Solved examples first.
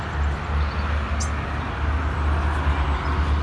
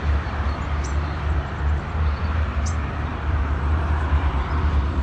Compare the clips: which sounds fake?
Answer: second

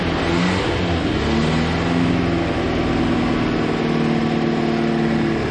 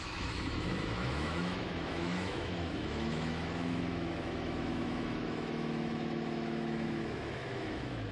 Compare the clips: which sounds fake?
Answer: second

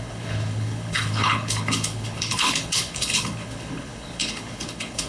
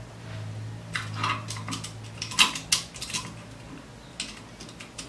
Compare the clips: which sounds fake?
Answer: first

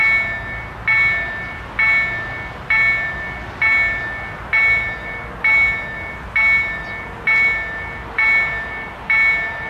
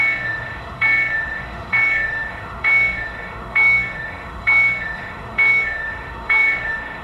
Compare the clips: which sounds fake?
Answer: second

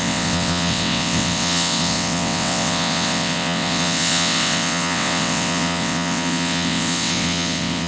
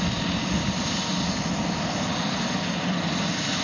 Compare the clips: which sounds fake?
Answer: first